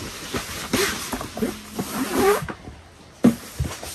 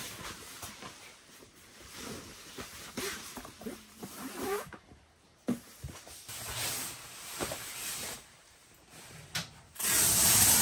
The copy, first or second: second